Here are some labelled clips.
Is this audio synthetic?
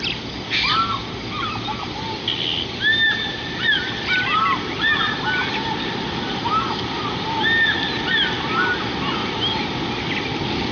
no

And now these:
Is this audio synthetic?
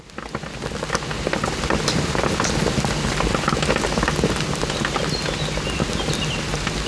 no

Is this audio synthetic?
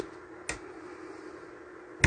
no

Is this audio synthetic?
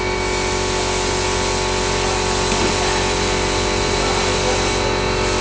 no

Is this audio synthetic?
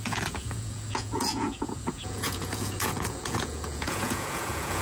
yes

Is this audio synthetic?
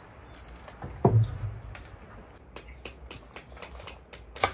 no